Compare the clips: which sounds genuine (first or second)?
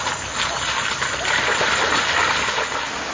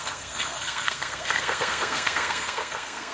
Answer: first